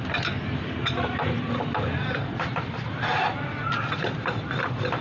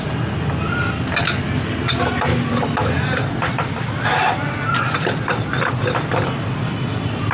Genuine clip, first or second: second